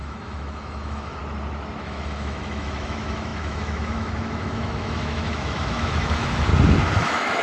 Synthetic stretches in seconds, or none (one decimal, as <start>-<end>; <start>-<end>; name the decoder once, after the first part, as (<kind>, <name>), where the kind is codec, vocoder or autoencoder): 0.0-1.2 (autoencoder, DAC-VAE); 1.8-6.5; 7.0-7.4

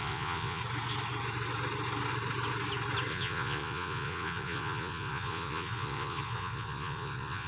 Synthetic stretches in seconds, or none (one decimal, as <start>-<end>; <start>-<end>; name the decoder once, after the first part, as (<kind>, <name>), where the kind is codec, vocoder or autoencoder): 0.0-0.6 (vocoder, Vocos); 3.1-7.5

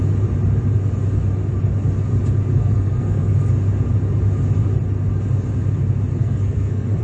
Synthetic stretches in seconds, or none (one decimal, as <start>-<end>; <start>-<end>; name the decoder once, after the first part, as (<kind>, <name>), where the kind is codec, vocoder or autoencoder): 2.6-3.5 (codec, SNAC); 6.1-7.0

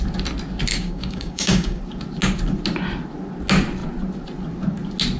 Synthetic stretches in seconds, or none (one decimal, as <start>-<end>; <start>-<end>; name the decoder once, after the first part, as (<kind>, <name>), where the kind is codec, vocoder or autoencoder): 0.7-1.8 (codec, DAC)

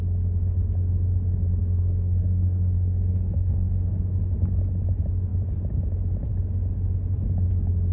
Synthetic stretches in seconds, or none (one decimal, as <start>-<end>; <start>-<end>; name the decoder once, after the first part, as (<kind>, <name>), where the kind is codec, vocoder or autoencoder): 1.6-4.2 (codec, SNAC)

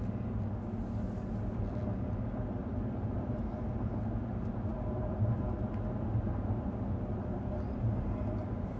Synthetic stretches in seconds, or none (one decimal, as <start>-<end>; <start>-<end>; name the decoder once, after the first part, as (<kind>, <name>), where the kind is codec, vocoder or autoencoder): 2.6-3.5 (vocoder, BigVGAN v2); 4.7-5.3

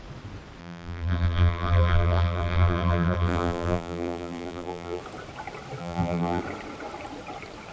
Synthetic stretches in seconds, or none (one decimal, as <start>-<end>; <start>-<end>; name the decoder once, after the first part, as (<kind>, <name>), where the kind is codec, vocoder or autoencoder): 0.6-5.0 (vocoder, BigVGAN v2); 5.8-6.4

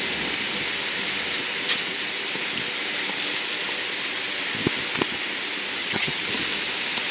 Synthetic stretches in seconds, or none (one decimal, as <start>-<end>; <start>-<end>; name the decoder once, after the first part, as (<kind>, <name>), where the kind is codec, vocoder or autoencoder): 5.8-6.3 (vocoder, HiFi-GAN)